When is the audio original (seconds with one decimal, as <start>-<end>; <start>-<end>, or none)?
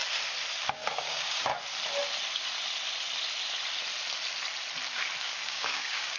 0.0-0.6; 1.5-5.2